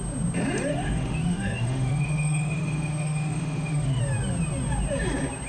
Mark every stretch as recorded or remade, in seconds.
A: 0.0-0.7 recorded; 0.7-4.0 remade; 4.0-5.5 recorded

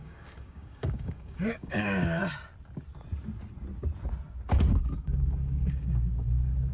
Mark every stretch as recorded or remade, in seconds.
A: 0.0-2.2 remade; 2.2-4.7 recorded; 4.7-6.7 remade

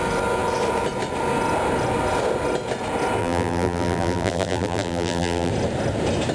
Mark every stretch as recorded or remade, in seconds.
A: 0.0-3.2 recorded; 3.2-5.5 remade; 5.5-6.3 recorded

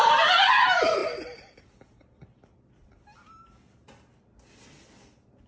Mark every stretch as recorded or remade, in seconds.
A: 0.0-1.0 recorded; 1.0-1.6 remade; 1.6-5.5 recorded

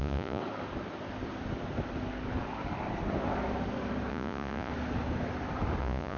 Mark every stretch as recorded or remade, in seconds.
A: 0.0-0.4 remade; 0.4-4.1 recorded; 4.1-4.7 remade; 4.7-5.8 recorded; 5.8-6.2 remade

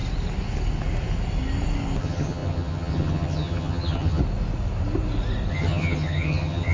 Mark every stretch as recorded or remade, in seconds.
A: 0.0-2.0 recorded; 2.0-4.2 remade; 4.2-5.5 recorded; 5.5-6.7 remade

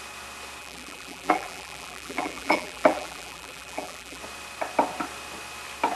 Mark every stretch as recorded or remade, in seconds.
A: 0.0-0.6 recorded; 0.6-4.2 remade; 4.2-6.0 recorded

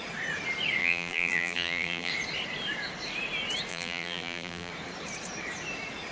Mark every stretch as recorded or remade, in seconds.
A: 0.0-0.8 recorded; 0.8-2.1 remade; 2.1-3.7 recorded; 3.7-4.7 remade; 4.7-6.1 recorded